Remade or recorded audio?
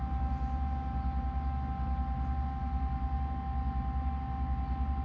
recorded